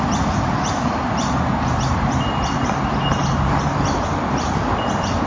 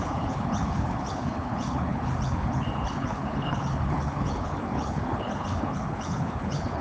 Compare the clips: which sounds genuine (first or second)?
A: first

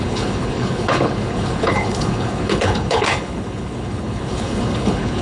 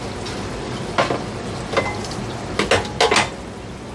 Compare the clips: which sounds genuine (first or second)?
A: second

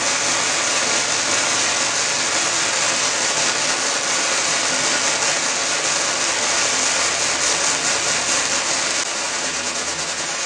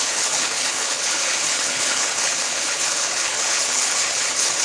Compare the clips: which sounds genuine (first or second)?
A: first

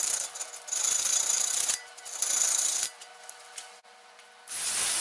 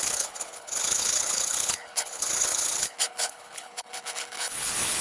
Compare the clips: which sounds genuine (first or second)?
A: first